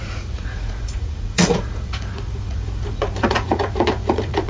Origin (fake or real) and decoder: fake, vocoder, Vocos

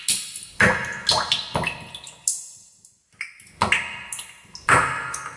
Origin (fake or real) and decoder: real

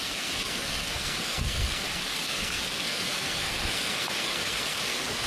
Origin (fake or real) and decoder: fake, codec, SNAC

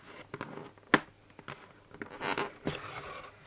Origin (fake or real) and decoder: real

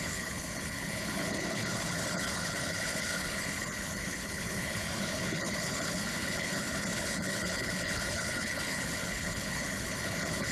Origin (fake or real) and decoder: fake, codec, HILCodec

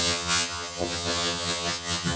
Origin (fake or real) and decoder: fake, vocoder, HiFi-GAN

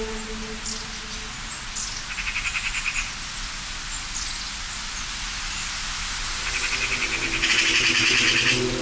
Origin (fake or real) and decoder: real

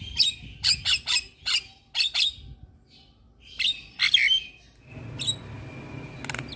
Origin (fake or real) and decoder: real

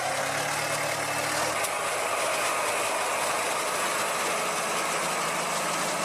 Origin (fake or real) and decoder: real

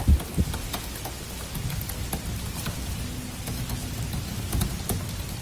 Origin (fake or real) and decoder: real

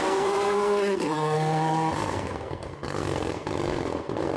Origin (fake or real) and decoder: fake, codec, SNAC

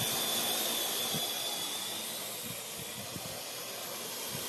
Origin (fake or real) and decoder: real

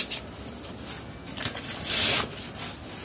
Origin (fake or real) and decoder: real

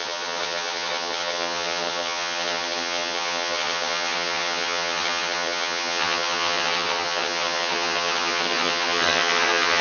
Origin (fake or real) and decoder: fake, vocoder, HiFi-GAN